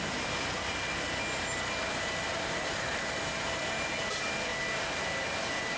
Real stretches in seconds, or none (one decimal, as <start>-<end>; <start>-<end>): 0.0-5.8